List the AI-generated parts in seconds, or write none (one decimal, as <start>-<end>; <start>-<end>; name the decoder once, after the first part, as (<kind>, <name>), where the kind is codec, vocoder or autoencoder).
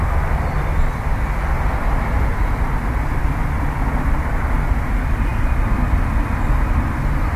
none